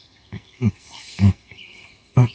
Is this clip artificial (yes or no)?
yes